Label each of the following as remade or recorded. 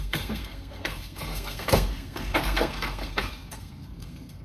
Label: remade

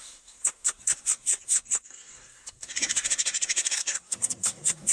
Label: remade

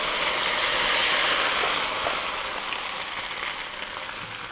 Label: recorded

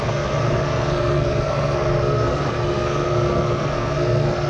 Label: remade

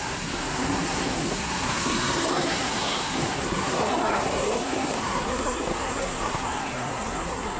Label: remade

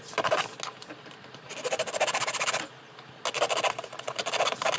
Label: recorded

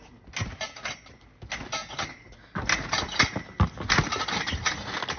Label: recorded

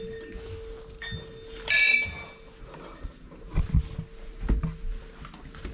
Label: recorded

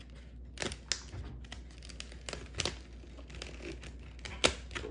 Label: recorded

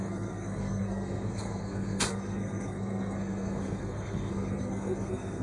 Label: remade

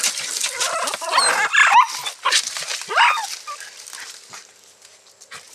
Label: recorded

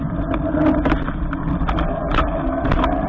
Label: recorded